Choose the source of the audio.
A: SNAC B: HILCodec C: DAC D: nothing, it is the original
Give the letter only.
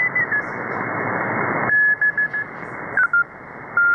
D